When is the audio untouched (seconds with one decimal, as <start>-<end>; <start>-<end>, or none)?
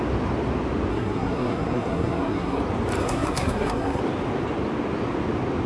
0.0-0.9; 2.6-3.0; 4.0-5.7